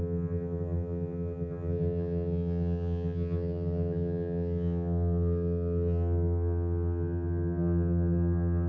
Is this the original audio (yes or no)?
no